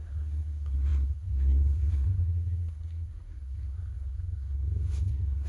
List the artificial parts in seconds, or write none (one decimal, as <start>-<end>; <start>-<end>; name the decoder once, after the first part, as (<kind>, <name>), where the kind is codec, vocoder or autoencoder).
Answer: 0.0-5.5 (codec, SNAC)